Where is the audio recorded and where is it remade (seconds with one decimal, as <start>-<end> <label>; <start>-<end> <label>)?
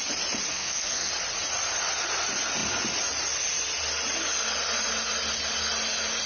0.0-0.5 recorded; 0.5-1.1 remade; 1.1-6.3 recorded